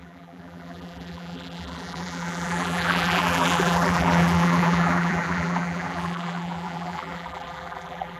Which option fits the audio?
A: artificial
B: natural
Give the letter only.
A